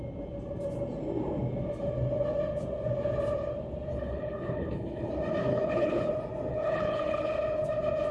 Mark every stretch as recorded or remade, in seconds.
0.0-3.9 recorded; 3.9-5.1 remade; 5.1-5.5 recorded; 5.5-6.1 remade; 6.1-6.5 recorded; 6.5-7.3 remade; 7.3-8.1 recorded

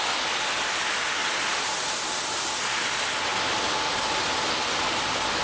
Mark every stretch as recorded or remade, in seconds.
0.0-1.2 recorded; 1.2-2.2 remade; 2.2-5.4 recorded

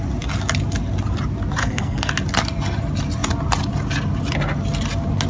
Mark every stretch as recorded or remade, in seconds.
0.0-1.6 recorded; 1.6-2.1 remade; 2.1-5.3 recorded